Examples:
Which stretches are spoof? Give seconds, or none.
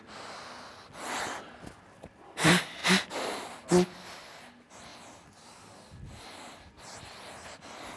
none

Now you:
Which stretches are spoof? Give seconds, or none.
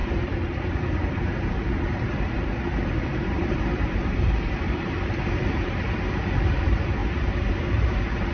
0.0-8.3 (vocoder, BigVGAN v2)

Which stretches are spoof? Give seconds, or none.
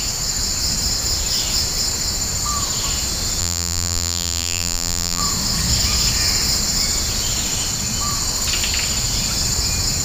3.4-5.2 (vocoder, BigVGAN v2)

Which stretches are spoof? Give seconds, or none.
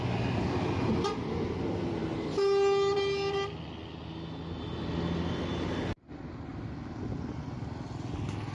none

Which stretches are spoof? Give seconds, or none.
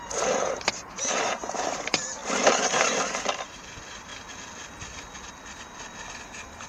0.0-2.2 (vocoder, BigVGAN v2); 3.3-4.1; 6.3-6.7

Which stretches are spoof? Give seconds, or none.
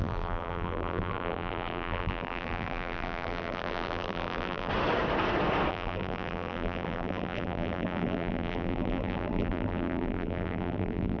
0.0-4.7 (vocoder, BigVGAN v2); 5.7-11.2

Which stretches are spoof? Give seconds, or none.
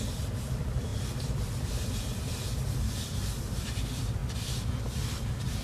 0.0-5.6 (vocoder, BigVGAN v2)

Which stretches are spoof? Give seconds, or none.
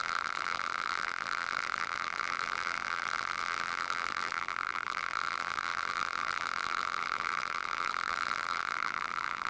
0.0-9.5 (vocoder, BigVGAN v2)